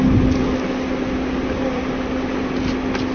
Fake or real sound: real